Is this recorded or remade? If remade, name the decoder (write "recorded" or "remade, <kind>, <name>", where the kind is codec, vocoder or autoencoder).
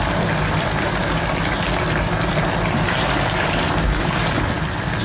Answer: recorded